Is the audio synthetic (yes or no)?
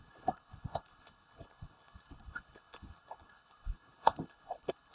yes